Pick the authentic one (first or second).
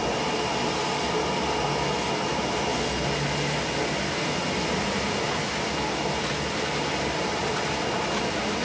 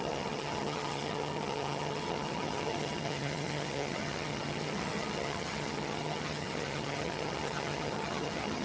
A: first